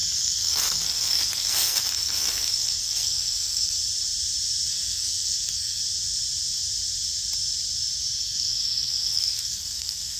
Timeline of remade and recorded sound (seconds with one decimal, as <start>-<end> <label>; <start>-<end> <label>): 0.0-3.8 remade; 3.8-4.7 recorded; 4.7-5.8 remade; 5.8-8.2 recorded; 8.2-10.2 remade